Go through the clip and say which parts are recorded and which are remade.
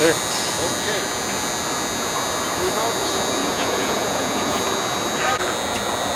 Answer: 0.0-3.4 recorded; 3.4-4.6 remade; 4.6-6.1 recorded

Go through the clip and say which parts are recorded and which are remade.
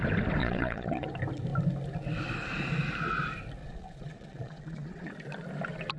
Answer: 0.0-0.4 recorded; 0.4-1.1 remade; 1.1-3.6 recorded; 3.6-5.1 remade; 5.1-6.0 recorded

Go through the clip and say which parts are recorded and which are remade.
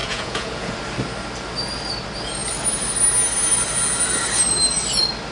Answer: 0.0-0.7 remade; 0.7-5.3 recorded